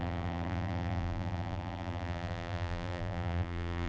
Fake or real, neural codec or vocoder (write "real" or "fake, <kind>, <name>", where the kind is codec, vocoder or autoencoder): fake, vocoder, BigVGAN v2